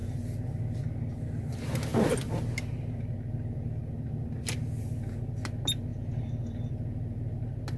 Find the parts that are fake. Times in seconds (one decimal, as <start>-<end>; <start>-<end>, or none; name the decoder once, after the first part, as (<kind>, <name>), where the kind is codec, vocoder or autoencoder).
none